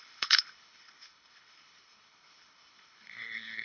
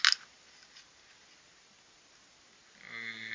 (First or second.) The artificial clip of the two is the first